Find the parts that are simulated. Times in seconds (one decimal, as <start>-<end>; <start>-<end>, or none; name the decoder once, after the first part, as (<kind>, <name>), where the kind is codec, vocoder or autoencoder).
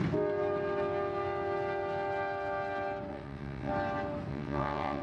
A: 3.1-3.7 (vocoder, WaveNeXt); 4.3-5.0